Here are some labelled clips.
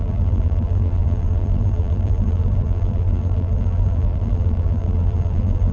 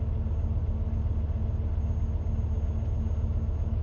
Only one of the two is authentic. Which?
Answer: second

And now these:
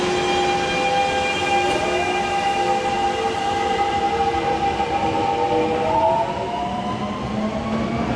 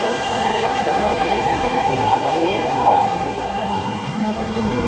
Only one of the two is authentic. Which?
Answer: first